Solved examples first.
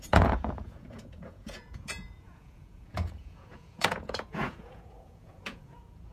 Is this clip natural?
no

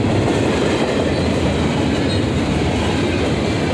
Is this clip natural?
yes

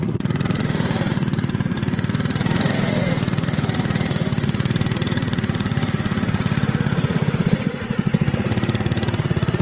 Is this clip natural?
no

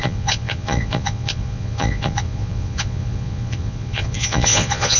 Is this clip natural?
no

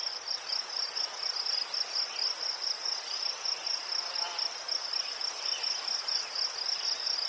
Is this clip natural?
yes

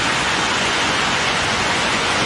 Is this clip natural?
no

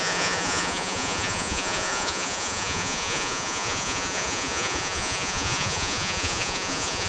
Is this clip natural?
no